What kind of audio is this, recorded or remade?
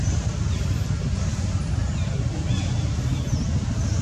recorded